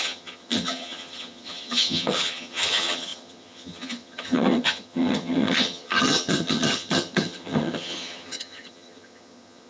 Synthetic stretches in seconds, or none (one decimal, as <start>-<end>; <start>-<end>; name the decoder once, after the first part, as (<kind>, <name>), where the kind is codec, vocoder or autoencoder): 0.0-9.7 (vocoder, HiFi-GAN)